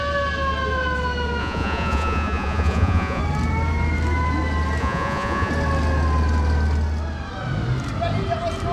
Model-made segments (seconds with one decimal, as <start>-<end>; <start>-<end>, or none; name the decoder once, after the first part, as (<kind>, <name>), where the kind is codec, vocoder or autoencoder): 1.4-3.2 (vocoder, Vocos); 4.8-5.5